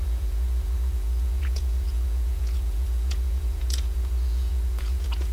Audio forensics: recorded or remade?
remade